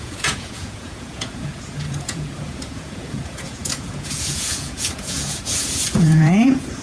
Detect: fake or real fake